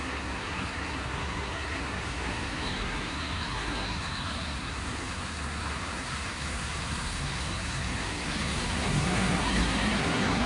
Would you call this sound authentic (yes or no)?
no